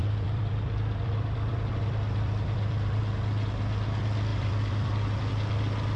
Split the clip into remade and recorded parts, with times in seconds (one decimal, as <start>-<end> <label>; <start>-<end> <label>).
0.0-3.0 remade; 3.0-4.3 recorded; 4.3-5.3 remade; 5.3-6.0 recorded